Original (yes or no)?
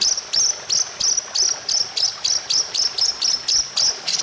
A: yes